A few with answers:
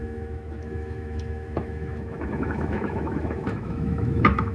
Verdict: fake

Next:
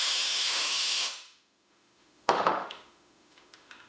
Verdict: fake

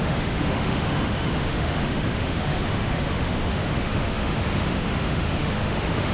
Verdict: fake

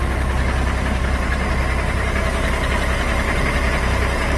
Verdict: real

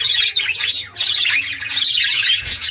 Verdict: fake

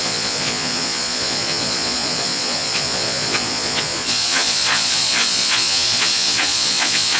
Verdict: fake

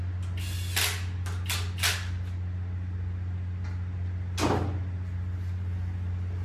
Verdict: real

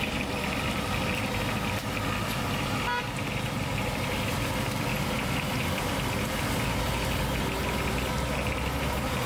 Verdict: real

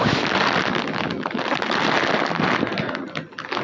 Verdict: real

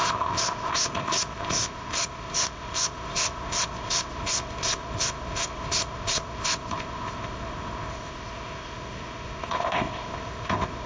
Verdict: fake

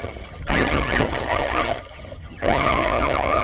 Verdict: fake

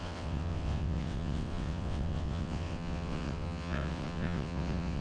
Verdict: fake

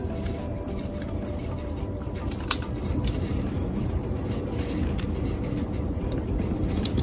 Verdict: fake